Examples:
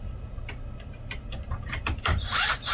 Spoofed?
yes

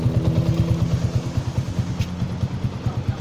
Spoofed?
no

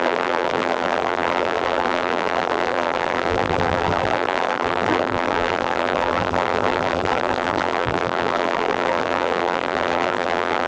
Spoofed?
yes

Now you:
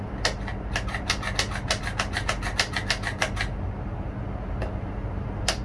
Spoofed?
no